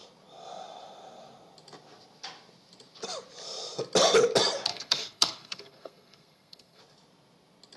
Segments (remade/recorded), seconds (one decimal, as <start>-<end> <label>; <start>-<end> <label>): 0.0-4.7 recorded; 4.7-6.8 remade; 6.8-7.8 recorded